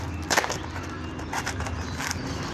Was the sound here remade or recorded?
recorded